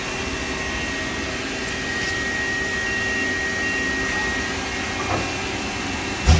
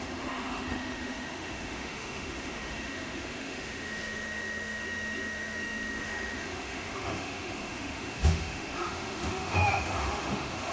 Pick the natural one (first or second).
first